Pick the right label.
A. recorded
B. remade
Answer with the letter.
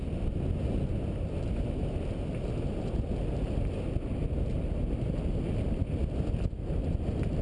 A